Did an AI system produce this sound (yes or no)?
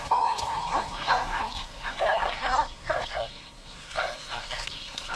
yes